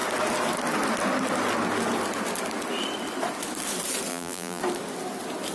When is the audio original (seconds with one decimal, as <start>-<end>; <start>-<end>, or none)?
0.0-4.1; 4.6-5.5